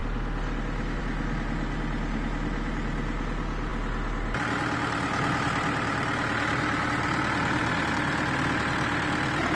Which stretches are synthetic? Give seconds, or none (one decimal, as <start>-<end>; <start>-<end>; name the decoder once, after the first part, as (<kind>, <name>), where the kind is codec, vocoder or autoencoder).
none